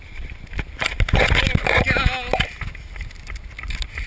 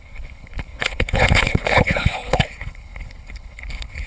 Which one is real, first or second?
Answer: first